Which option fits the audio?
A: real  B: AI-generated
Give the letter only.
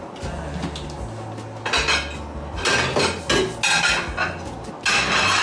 A